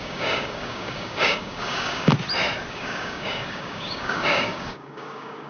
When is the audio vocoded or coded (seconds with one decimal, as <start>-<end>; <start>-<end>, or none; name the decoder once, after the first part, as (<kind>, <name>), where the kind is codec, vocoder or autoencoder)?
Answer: 0.0-2.1 (codec, DAC); 2.7-5.5